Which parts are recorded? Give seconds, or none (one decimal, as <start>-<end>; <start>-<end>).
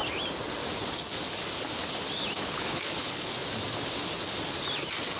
0.0-2.4; 3.3-5.2